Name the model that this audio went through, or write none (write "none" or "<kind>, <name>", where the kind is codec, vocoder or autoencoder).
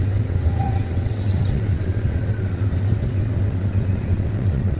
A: vocoder, WaveNeXt